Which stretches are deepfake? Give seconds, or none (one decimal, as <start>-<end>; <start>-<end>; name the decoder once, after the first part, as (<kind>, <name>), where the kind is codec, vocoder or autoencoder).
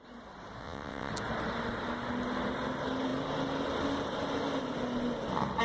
0.6-1.1 (vocoder, WaveNeXt)